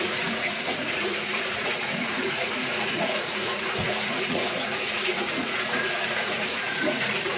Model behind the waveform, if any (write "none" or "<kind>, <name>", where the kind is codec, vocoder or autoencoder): vocoder, Vocos